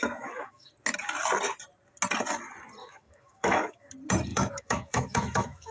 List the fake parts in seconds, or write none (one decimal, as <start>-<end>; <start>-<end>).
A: 0.0-0.7; 2.8-3.9; 4.3-5.7